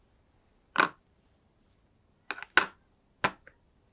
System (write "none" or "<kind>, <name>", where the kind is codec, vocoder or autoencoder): none